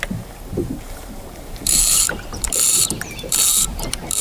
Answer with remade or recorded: remade